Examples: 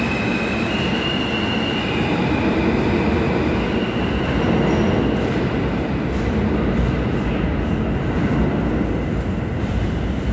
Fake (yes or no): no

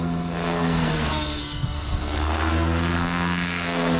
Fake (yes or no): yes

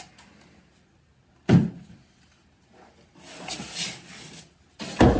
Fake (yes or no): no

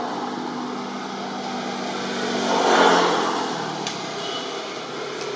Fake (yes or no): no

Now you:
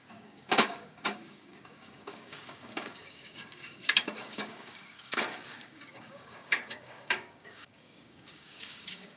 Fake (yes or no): yes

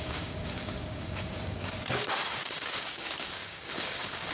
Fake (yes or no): yes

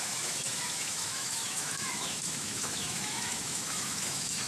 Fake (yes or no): yes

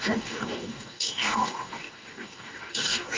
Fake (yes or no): yes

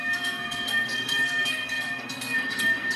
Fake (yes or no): yes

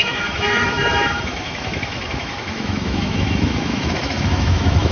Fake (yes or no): yes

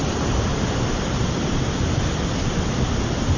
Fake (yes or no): no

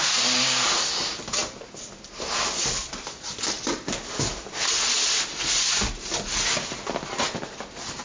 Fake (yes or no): no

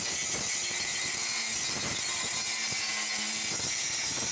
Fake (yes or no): no